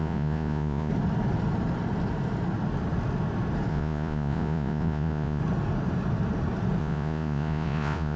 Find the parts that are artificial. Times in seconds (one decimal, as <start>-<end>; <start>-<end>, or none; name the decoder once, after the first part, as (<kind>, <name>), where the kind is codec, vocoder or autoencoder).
0.0-0.9 (vocoder, Vocos); 3.7-5.4; 6.8-8.2